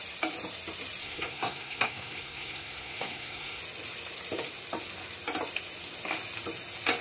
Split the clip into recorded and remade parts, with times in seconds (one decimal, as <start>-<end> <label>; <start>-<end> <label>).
0.0-1.0 recorded; 1.0-3.6 remade; 3.6-7.0 recorded